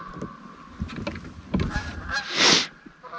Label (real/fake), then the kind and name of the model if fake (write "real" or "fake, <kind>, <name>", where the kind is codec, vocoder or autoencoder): real